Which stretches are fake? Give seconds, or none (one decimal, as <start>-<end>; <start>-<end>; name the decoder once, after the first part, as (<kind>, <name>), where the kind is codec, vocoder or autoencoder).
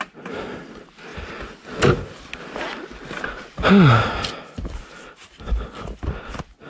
none